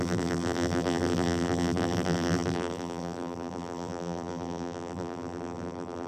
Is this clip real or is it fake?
fake